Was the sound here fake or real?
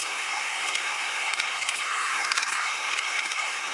fake